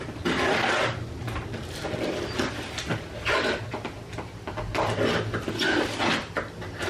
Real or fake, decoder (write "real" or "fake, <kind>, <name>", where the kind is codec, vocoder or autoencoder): real